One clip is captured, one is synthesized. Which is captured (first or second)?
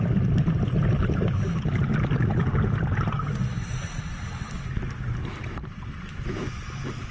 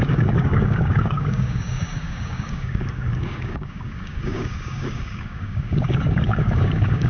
first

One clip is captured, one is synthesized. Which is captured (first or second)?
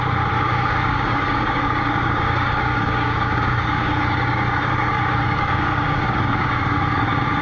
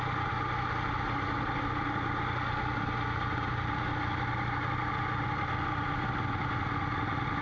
second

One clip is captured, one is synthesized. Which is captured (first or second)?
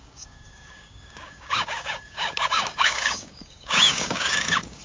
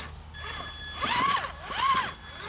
second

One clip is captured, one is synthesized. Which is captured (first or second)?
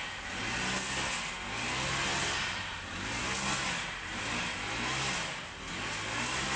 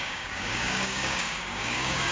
first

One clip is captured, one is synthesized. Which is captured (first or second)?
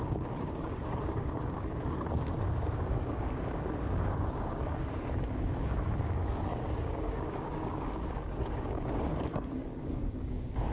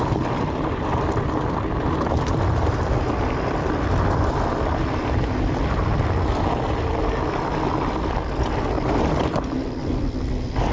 second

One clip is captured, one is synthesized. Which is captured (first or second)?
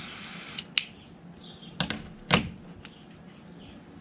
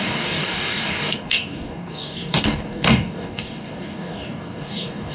first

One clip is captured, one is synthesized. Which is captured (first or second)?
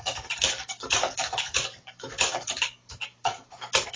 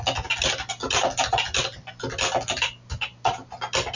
second